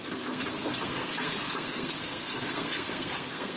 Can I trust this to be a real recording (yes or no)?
no